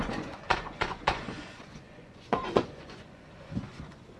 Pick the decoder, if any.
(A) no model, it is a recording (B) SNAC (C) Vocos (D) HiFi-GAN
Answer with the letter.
C